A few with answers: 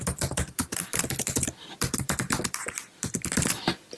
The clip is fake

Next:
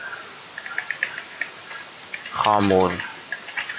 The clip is fake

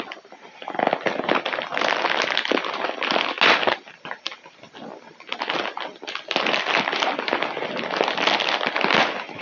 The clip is real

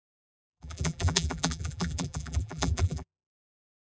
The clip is fake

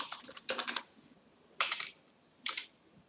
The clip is fake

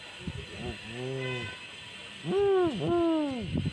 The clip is real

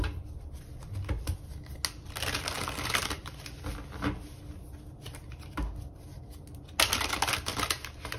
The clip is real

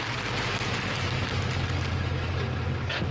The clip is real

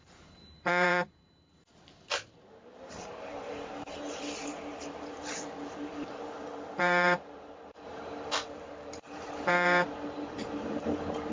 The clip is fake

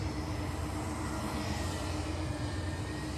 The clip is fake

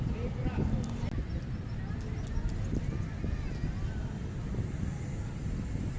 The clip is real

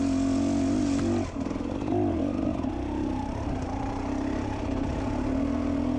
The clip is real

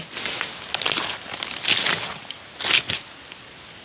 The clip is real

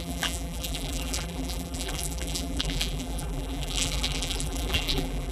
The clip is fake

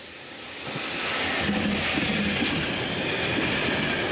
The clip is real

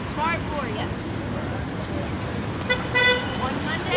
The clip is real